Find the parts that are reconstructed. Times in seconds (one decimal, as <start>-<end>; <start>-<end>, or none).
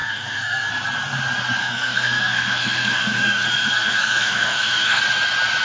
0.0-0.7; 1.6-5.0